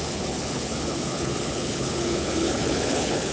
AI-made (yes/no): yes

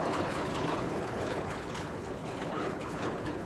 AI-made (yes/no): yes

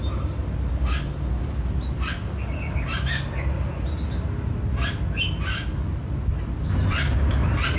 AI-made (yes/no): no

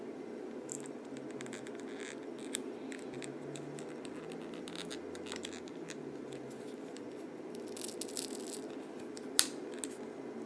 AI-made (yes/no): no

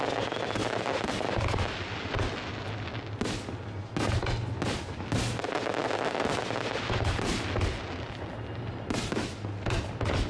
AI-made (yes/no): no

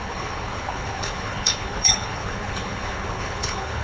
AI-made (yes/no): yes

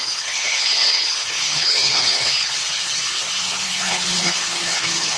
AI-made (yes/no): yes